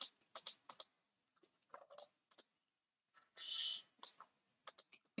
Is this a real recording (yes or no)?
yes